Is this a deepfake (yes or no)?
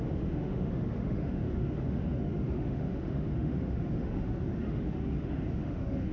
yes